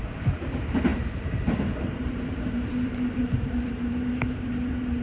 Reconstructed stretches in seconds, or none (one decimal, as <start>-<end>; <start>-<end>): 0.0-5.0